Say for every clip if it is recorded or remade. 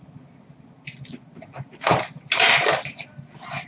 recorded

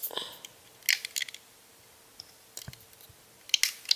recorded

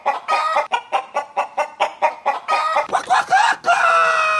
recorded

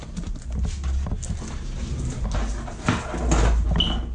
recorded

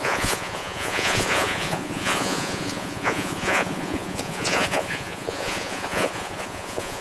remade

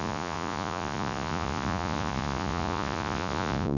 remade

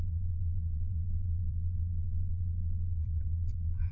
remade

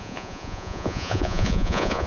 remade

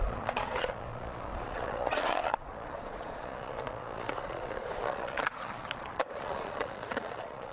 remade